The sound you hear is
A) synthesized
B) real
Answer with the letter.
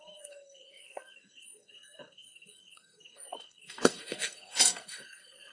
A